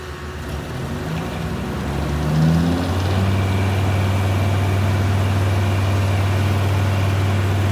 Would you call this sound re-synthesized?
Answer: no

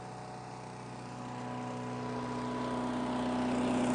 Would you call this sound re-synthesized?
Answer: no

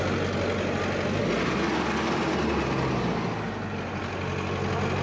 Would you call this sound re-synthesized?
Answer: no